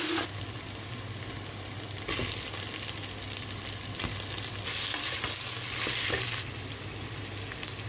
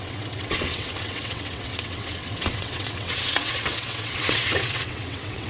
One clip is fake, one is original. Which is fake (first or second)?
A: second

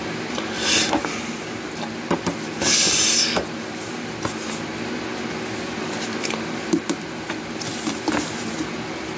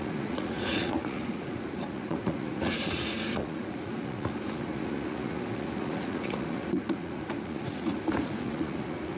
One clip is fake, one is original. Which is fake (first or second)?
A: second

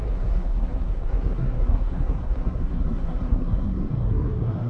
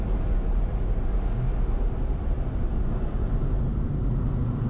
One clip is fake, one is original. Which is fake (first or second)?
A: first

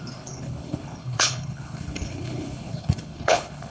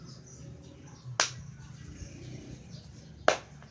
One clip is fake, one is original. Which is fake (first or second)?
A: first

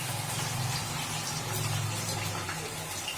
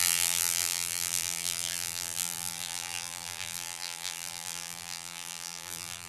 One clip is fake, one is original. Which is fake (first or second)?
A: second